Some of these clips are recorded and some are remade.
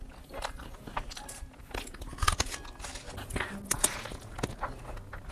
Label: recorded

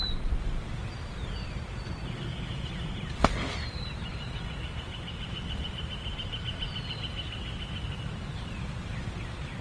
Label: remade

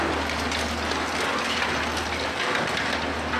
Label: recorded